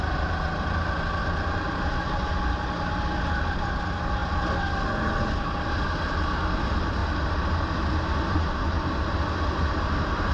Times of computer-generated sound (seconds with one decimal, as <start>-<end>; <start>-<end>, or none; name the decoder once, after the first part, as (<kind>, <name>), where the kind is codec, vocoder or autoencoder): none